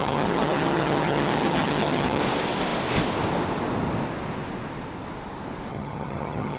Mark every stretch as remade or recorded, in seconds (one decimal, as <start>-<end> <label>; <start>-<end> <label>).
0.0-2.2 remade; 2.2-5.7 recorded; 5.7-6.6 remade